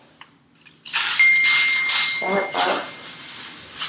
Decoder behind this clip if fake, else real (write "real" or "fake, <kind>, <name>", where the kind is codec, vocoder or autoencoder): real